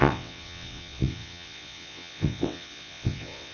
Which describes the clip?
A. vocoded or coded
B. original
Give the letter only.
A